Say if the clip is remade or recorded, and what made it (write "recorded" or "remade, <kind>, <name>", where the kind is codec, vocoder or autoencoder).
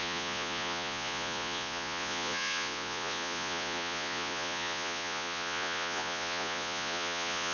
remade, vocoder, Vocos